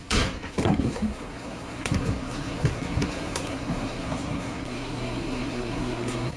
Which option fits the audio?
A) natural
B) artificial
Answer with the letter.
B